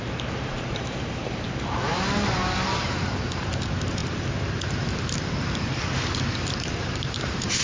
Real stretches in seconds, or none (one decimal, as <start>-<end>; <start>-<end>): 4.0-7.1